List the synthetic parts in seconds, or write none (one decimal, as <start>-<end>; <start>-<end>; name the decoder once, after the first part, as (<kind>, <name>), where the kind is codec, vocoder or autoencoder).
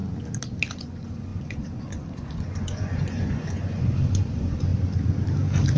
0.7-4.7 (vocoder, Vocos)